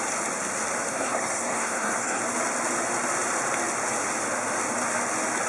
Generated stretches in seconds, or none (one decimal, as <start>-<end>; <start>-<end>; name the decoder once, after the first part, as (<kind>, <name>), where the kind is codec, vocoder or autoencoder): 0.9-2.2 (codec, SNAC)